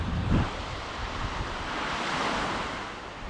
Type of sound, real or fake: fake